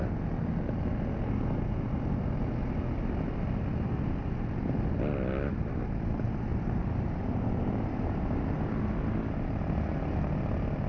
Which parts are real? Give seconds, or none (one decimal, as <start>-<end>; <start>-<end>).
0.0-6.5; 8.5-10.9